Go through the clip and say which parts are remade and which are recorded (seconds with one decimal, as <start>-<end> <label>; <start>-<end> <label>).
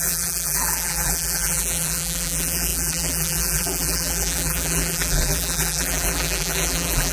0.0-7.1 remade